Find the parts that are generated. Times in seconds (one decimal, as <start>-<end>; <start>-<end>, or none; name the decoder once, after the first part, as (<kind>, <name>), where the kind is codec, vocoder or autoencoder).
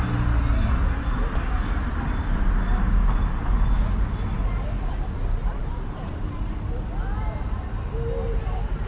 5.6-6.7 (vocoder, BigVGAN v2)